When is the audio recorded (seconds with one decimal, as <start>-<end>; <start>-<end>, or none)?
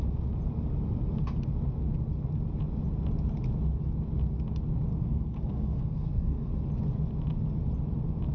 0.0-4.9; 6.5-8.3